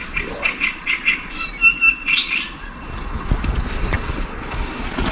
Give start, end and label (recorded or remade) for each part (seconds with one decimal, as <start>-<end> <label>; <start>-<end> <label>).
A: 0.0-1.5 remade; 1.5-2.0 recorded; 2.0-5.1 remade